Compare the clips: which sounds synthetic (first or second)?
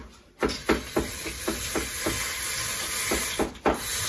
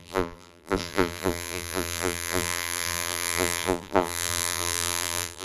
second